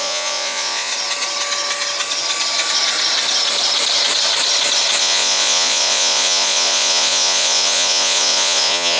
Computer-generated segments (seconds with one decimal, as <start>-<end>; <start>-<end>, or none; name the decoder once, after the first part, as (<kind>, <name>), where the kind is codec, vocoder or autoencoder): 0.0-0.9 (vocoder, Vocos); 5.0-9.0